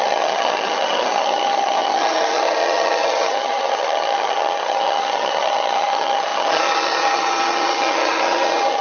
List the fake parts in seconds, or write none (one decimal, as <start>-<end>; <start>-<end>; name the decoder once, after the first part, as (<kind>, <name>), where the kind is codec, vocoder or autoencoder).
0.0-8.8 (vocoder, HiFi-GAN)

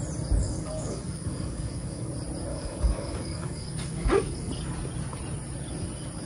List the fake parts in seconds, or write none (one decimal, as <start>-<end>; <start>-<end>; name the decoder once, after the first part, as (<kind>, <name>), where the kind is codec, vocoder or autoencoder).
0.4-2.1 (codec, DAC); 2.5-4.5

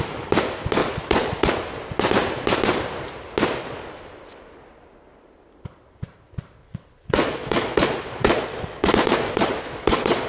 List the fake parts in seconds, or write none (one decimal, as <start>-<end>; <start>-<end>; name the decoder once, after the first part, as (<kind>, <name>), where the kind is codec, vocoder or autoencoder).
0.8-1.5 (vocoder, Vocos); 6.6-10.3